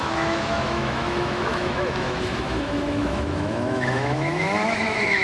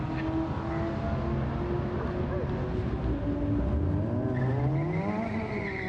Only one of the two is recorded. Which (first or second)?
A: second